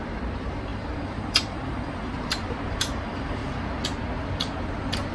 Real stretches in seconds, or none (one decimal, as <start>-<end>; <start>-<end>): 3.4-5.1